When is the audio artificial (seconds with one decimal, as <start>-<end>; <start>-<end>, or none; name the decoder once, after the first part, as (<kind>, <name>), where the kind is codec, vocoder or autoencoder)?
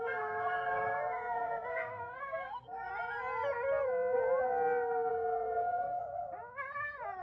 0.0-2.9 (codec, SNAC); 5.1-6.0